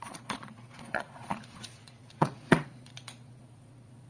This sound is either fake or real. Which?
fake